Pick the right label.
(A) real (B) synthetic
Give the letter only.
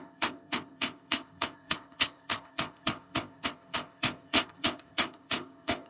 B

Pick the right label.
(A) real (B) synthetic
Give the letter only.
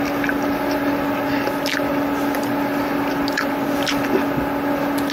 A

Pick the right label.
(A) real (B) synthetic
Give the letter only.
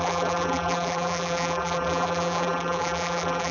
B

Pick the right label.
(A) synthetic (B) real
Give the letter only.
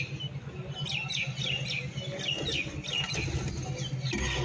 B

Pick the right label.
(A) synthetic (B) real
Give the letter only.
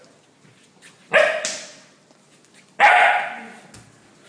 B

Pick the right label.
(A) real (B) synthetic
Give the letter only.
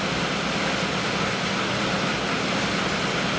A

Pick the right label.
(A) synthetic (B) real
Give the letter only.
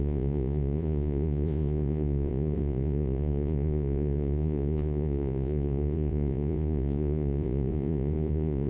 A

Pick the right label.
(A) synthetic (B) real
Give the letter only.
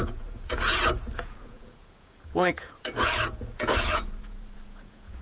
A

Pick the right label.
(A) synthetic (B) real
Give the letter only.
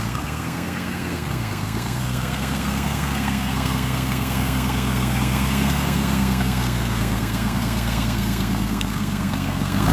A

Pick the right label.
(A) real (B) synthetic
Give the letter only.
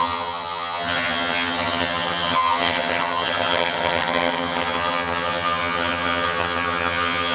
B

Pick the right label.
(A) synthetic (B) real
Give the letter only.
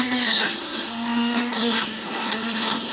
A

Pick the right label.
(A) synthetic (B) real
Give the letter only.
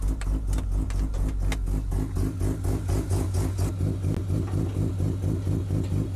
B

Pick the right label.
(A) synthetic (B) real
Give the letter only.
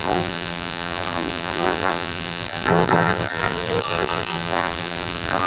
A